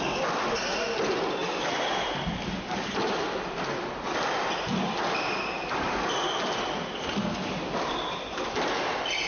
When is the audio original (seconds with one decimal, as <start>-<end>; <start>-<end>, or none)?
0.0-9.3

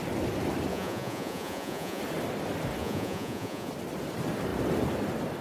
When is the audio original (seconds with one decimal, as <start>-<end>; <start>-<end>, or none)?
0.0-0.7; 2.0-2.8; 3.7-5.4

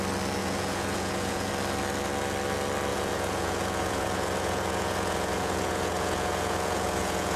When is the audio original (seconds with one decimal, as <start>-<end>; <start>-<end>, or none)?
0.0-0.4; 1.5-2.9

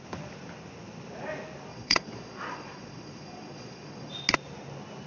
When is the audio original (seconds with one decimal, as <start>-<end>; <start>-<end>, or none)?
0.0-1.7; 4.1-5.1

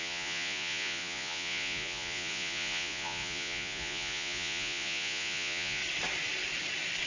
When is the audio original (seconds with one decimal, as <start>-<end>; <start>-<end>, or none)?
5.8-7.1

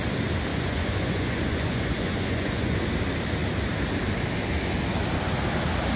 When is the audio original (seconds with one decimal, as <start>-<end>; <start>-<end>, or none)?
0.0-0.5; 2.8-6.0

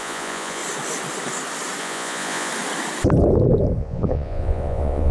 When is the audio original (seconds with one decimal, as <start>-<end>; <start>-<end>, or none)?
0.6-1.8; 2.5-3.8